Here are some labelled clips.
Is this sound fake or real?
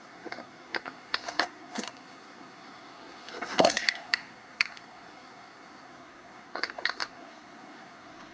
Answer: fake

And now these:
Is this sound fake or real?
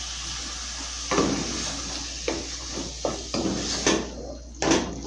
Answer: real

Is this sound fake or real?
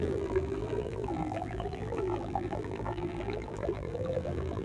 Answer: fake